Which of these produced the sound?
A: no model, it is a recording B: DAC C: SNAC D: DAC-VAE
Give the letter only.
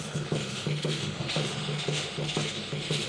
D